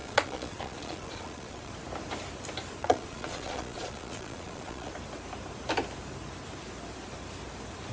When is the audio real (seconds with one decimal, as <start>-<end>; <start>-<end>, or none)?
1.7-2.8; 4.9-7.9